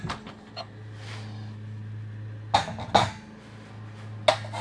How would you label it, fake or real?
real